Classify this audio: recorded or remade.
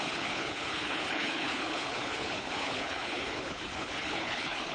remade